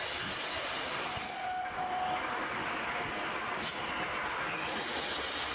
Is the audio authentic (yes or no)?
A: yes